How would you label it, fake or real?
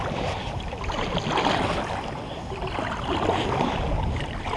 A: real